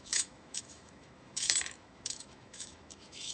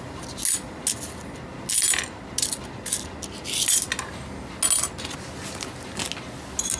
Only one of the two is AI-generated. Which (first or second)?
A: first